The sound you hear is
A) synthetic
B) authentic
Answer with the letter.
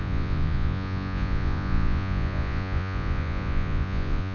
A